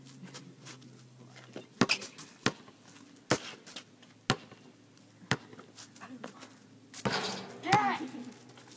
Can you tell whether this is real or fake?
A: real